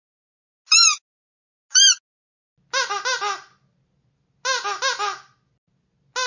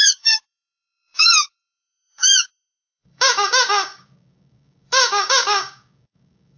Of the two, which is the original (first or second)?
first